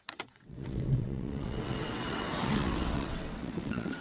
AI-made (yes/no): yes